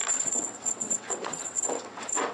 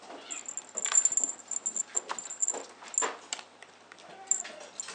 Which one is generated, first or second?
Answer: first